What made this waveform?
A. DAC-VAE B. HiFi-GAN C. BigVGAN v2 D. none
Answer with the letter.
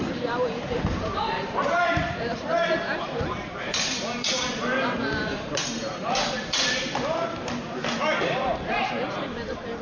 C